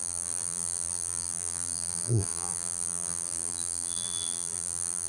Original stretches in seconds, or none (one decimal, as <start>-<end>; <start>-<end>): none